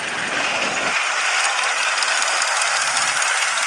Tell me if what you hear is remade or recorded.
recorded